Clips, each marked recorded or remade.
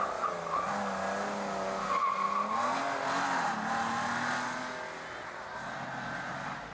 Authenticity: recorded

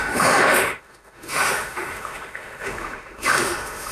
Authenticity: remade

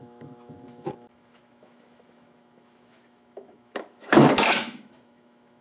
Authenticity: remade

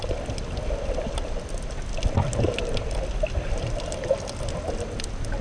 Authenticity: recorded